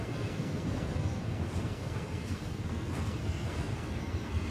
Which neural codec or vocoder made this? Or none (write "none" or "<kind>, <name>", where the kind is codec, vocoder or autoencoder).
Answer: codec, SNAC